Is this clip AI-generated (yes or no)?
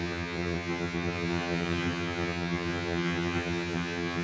yes